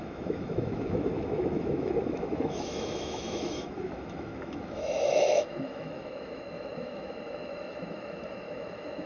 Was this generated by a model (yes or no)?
yes